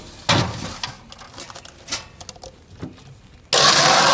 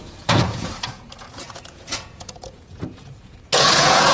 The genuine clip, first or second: first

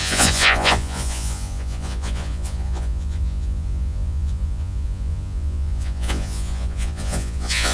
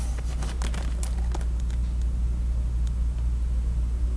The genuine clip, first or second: second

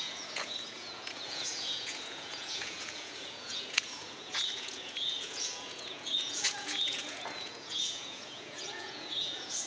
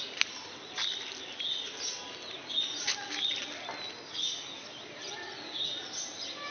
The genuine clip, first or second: second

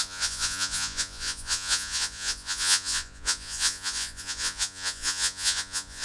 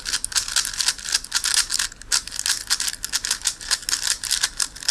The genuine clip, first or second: second